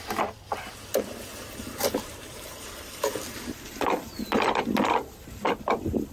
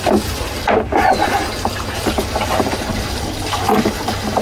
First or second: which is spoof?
first